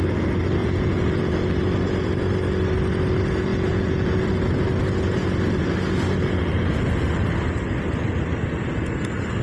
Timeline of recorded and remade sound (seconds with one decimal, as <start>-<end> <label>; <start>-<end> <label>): 0.0-0.6 recorded; 0.6-1.3 remade; 1.3-3.5 recorded; 3.5-4.2 remade; 4.2-9.4 recorded